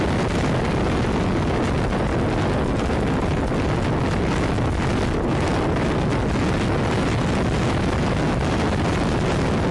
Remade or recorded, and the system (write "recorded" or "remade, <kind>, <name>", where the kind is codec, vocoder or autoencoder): recorded